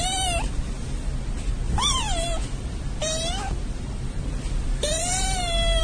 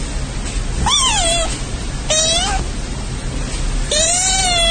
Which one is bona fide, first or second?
second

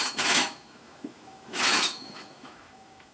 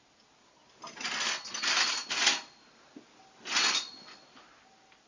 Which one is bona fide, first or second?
second